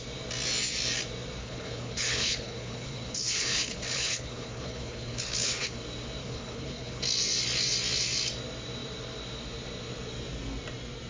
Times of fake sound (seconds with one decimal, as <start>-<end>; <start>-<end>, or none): 1.4-5.8; 6.2-7.0